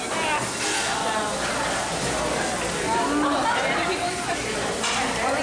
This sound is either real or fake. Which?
real